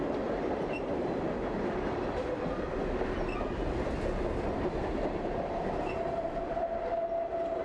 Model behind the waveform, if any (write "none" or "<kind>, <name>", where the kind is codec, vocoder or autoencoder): none